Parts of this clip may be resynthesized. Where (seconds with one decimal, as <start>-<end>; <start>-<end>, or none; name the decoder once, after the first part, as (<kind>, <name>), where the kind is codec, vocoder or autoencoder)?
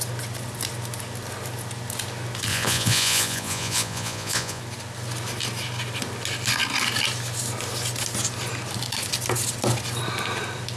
2.5-4.6 (vocoder, Vocos)